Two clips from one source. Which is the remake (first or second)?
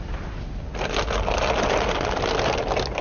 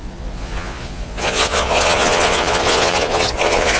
second